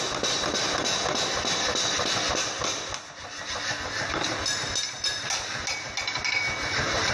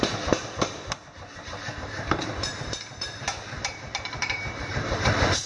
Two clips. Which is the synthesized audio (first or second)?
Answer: second